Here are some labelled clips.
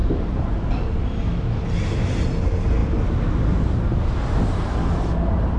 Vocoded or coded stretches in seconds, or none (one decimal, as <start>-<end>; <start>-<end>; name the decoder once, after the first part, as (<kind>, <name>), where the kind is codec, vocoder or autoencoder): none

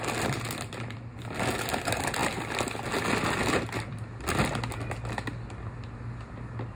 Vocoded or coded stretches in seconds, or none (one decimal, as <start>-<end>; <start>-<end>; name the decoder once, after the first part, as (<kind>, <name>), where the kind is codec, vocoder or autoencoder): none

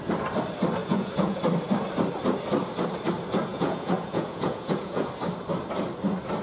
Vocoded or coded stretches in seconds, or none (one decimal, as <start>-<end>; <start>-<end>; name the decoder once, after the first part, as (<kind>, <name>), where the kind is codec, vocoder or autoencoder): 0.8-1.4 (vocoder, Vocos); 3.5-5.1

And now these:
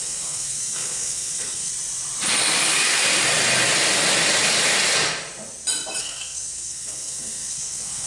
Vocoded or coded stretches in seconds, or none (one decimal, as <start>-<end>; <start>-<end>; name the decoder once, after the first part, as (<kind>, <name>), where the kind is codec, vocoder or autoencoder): 0.0-1.7 (codec, SNAC); 6.0-8.1

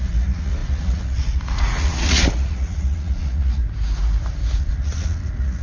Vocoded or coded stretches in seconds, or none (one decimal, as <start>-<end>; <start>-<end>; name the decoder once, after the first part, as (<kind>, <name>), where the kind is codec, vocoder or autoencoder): 0.0-3.6 (vocoder, Vocos); 4.6-5.6